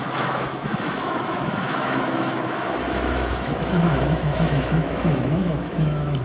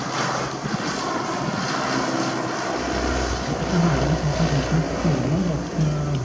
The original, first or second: second